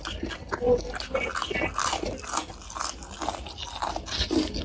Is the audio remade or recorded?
recorded